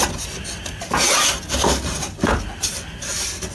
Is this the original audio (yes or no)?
yes